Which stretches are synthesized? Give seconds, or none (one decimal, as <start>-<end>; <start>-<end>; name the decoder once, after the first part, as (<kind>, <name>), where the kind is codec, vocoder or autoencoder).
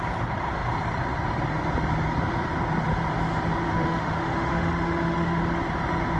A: 3.6-5.4 (autoencoder, DAC-VAE)